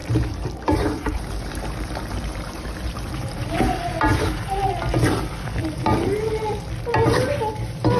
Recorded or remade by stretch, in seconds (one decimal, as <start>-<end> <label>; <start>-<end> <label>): 0.0-3.5 remade; 3.5-4.1 recorded; 4.1-4.6 remade; 4.6-5.6 recorded; 5.6-6.6 remade; 6.6-8.0 recorded